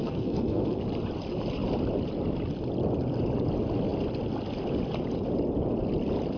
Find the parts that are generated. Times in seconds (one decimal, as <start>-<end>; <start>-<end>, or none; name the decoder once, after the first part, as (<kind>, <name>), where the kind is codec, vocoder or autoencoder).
0.0-0.8 (codec, SNAC)